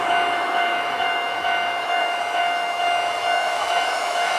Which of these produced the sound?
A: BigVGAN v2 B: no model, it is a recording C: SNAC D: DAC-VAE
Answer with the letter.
D